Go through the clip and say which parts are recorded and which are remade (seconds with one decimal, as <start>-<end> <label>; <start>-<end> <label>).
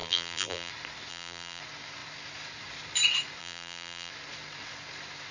0.0-0.7 remade; 0.7-1.1 recorded; 1.1-1.6 remade; 1.6-3.4 recorded; 3.4-4.1 remade; 4.1-5.3 recorded